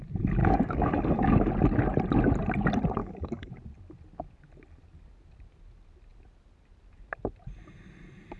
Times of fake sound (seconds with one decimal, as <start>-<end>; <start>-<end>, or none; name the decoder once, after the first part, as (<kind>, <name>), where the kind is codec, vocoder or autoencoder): 0.4-1.5 (codec, DAC); 3.0-3.5